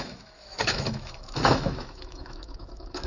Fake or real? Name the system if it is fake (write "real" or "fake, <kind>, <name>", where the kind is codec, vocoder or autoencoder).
fake, autoencoder, DAC-VAE